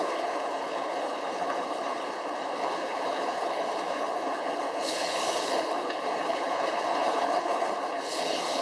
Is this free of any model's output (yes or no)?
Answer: no